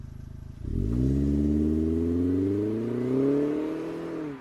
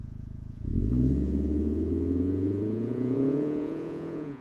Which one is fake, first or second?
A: second